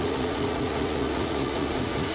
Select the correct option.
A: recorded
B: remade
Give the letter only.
B